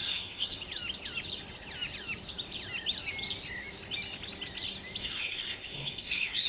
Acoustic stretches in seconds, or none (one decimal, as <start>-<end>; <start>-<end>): 0.6-5.0